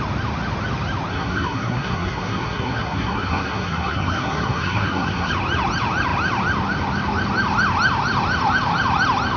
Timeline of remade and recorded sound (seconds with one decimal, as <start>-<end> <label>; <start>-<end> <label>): 0.0-1.1 recorded; 1.1-5.3 remade; 5.3-9.4 recorded